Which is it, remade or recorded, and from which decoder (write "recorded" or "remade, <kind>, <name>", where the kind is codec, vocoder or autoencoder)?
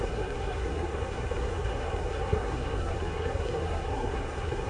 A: remade, codec, SNAC